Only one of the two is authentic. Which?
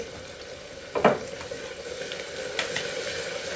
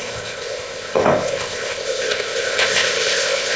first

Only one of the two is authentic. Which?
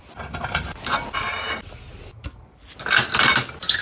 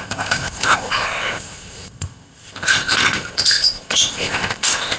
first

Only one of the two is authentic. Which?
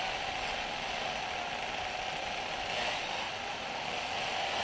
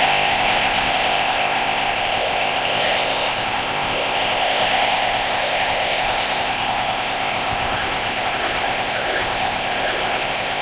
first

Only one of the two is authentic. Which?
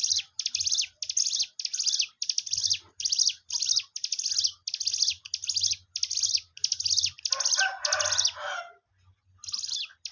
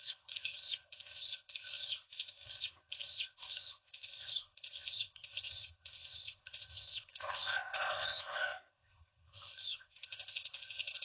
first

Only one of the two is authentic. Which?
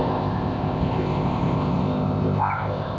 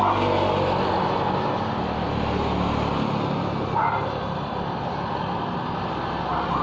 second